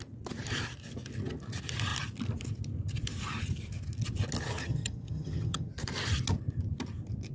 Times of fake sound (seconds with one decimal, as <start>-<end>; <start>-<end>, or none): 4.6-5.7